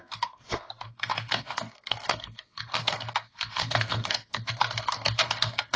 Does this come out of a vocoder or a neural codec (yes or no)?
yes